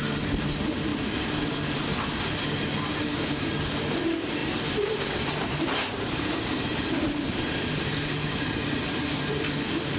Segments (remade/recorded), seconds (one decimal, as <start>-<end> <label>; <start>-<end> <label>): 0.0-0.9 recorded; 0.9-1.4 remade; 1.4-2.9 recorded; 2.9-3.5 remade; 3.5-4.4 recorded; 4.4-9.4 remade; 9.4-10.0 recorded